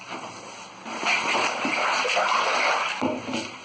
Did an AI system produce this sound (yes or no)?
no